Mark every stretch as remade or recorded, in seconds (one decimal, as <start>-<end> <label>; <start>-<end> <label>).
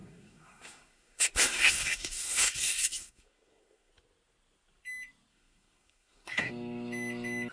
0.0-3.9 remade; 3.9-5.3 recorded; 5.3-6.5 remade; 6.5-7.5 recorded